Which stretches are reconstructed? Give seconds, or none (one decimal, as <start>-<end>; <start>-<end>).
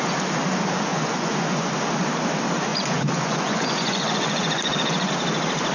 0.9-1.7; 2.7-5.1